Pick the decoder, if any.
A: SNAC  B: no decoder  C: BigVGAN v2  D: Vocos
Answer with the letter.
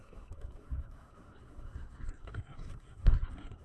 A